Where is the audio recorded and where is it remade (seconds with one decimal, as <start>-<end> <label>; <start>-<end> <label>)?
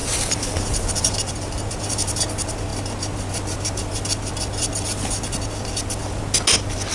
0.0-1.8 remade; 1.8-6.9 recorded